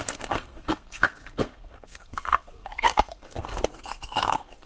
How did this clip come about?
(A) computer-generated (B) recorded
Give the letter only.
A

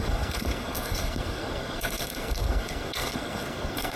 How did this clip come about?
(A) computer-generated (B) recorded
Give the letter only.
A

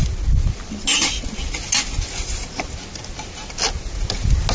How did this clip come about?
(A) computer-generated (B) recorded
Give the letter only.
B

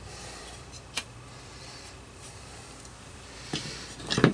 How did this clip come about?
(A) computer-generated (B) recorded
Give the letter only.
A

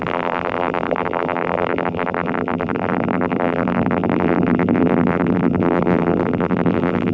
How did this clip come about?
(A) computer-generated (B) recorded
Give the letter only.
A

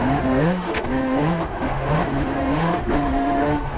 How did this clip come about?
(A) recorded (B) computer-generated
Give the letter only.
B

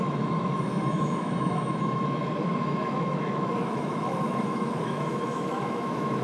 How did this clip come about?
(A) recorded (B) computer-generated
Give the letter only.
B